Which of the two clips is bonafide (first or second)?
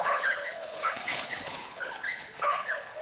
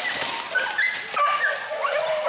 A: second